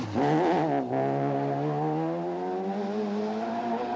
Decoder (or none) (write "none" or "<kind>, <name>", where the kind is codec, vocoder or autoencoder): none